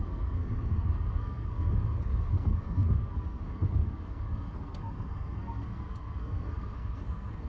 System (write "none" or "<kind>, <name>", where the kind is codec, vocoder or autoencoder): codec, SNAC